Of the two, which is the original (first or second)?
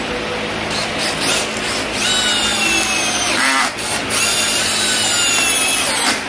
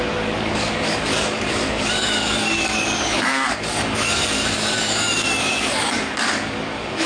first